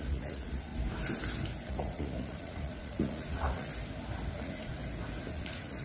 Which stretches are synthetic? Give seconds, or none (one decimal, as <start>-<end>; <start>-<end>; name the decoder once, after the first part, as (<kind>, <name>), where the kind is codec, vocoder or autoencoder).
0.0-0.7 (vocoder, Vocos); 1.7-3.7; 4.3-4.8; 5.3-5.8